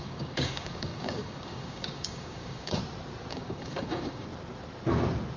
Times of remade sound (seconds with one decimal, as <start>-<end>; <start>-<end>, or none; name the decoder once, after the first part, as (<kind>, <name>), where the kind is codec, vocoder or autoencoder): 0.0-2.8 (codec, DAC); 3.3-4.3